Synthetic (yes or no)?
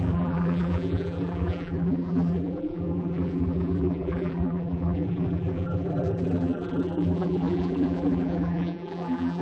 yes